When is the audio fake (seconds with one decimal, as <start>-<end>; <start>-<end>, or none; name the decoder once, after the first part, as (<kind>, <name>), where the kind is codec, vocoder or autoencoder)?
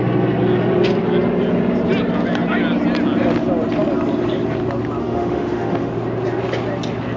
5.0-5.9 (autoencoder, DAC-VAE)